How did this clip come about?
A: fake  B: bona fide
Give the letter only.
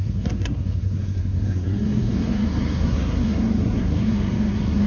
A